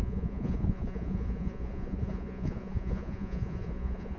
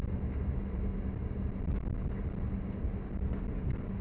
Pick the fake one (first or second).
first